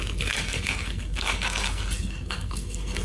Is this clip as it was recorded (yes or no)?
no